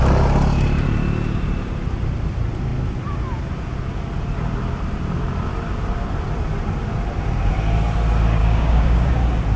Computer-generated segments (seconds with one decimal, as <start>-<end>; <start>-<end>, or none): 8.4-9.1